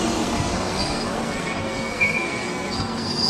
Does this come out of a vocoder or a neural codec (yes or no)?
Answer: yes